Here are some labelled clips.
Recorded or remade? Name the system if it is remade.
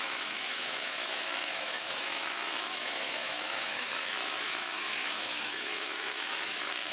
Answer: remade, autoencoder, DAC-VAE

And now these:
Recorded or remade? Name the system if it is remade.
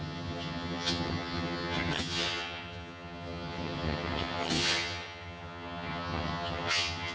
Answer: remade, vocoder, HiFi-GAN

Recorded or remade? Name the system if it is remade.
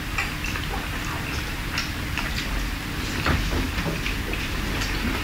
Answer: recorded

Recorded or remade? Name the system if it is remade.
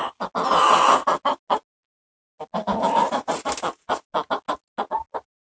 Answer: recorded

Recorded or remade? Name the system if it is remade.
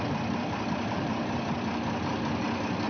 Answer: remade, vocoder, BigVGAN v2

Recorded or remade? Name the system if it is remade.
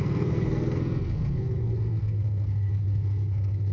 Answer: remade, codec, SNAC